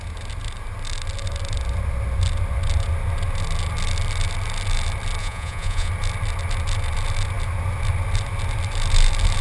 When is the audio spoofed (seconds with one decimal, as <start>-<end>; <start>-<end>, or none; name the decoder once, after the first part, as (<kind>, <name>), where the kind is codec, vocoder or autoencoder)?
5.2-5.9 (vocoder, Vocos)